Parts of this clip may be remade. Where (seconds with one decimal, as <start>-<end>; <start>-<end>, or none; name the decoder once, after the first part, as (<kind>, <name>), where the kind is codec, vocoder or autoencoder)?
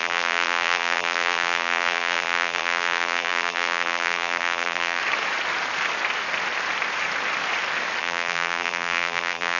0.0-5.0 (vocoder, BigVGAN v2); 8.0-9.6